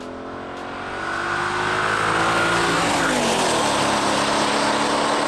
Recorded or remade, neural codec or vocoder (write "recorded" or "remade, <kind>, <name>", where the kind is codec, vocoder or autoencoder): recorded